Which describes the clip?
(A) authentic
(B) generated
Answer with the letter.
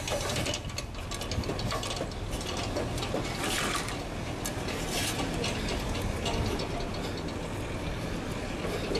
A